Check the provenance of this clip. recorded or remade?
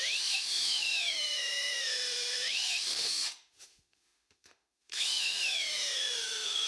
remade